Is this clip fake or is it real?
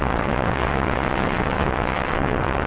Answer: fake